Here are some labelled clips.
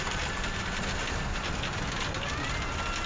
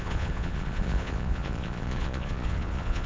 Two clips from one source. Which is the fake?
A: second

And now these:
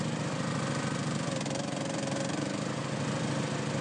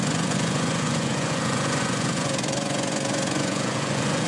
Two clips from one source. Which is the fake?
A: second